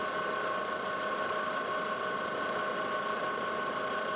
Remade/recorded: recorded